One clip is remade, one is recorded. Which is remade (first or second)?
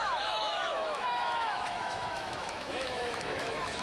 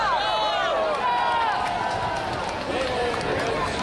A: first